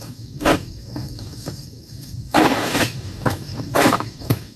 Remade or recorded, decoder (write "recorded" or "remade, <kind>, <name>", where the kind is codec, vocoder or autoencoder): remade, codec, DAC